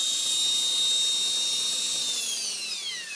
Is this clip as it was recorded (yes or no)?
yes